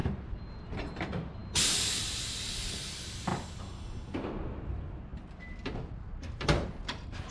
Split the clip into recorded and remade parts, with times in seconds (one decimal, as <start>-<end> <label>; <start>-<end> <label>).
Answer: 0.0-7.3 recorded